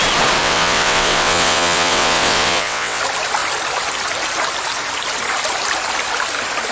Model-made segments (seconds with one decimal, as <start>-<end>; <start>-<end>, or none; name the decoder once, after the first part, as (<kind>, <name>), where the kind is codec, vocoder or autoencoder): 0.4-3.0 (vocoder, WaveNeXt)